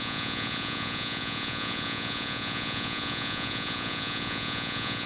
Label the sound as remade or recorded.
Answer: remade